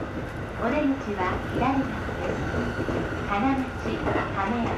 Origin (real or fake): real